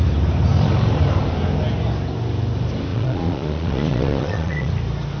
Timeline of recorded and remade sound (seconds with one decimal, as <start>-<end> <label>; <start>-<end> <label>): 0.0-2.9 recorded; 2.9-4.7 remade; 4.7-5.2 recorded